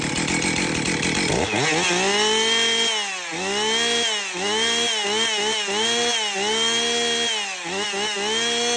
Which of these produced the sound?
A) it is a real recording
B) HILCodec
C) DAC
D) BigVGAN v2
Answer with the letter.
A